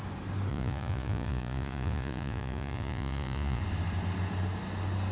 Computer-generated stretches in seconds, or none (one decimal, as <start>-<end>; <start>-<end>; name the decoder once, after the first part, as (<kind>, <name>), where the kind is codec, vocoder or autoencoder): 0.5-3.6 (vocoder, Vocos)

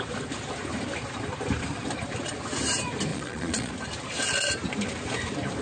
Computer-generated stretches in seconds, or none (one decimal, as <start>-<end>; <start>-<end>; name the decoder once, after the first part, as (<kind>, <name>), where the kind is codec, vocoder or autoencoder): 3.1-3.7 (vocoder, Vocos)

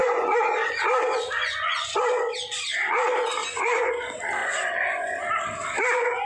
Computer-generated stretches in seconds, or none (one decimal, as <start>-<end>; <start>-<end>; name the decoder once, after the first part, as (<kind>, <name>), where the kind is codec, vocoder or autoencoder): 0.0-0.7 (vocoder, Vocos); 1.4-2.0; 3.4-3.9; 4.4-5.2

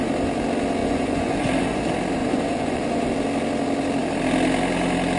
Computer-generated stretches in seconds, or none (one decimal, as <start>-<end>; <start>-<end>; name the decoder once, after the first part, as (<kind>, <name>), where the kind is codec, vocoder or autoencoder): 0.8-1.8 (vocoder, Vocos); 2.2-3.1